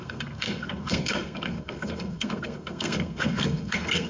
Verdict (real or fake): fake